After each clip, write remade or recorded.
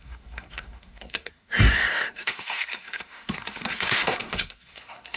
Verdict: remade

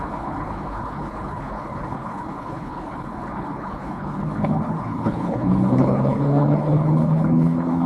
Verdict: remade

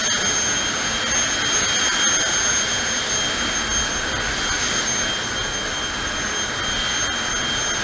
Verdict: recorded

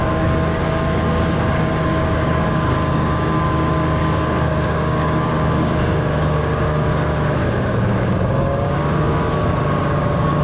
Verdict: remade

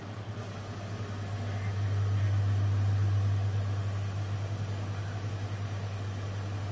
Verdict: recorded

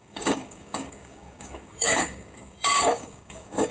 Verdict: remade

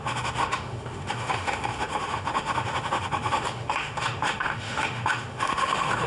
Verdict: remade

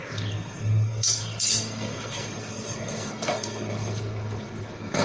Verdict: remade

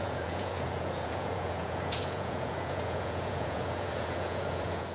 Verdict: remade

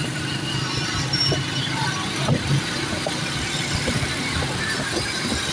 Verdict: recorded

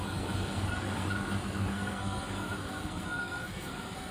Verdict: remade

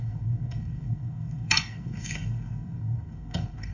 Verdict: remade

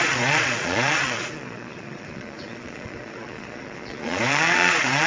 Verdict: remade